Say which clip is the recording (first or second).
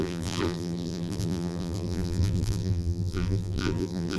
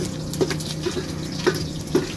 second